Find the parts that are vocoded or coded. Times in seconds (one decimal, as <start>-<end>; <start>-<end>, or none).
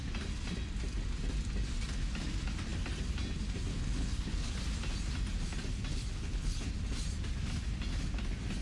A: 3.7-4.5; 5.9-6.7